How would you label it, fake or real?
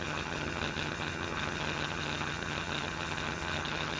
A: fake